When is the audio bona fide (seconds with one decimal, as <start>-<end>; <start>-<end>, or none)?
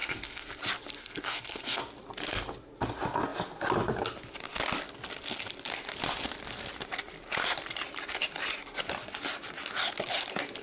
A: 0.6-1.0; 1.8-10.6